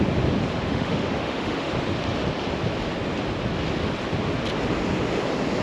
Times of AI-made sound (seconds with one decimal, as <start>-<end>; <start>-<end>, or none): 0.7-1.7